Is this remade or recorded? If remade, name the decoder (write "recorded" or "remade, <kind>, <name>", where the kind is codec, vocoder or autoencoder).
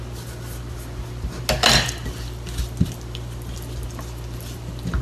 recorded